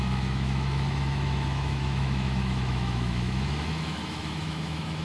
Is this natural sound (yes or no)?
no